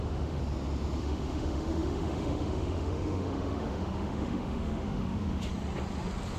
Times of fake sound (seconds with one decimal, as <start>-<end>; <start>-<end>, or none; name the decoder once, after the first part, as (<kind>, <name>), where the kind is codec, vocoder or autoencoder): 0.0-0.4 (autoencoder, DAC-VAE); 1.0-5.5